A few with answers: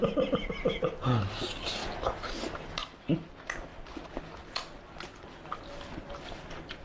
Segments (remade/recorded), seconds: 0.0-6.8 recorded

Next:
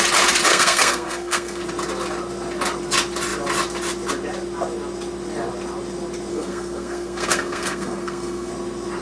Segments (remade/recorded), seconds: 0.0-0.5 recorded; 0.5-1.6 remade; 1.6-6.3 recorded; 6.3-8.5 remade; 8.5-9.0 recorded

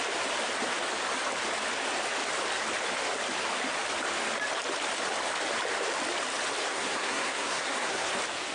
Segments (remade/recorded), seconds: 0.0-6.6 recorded; 6.6-8.1 remade; 8.1-8.5 recorded

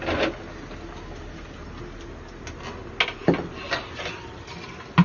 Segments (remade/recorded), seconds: 0.0-5.0 recorded

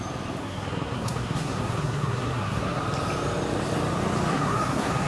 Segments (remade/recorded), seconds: 0.0-0.4 recorded; 0.4-2.8 remade; 2.8-4.3 recorded; 4.3-5.1 remade

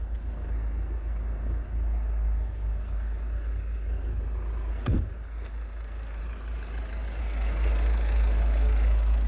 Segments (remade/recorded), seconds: 0.0-4.1 remade; 4.1-4.7 recorded; 4.7-6.2 remade; 6.2-7.2 recorded; 7.2-9.3 remade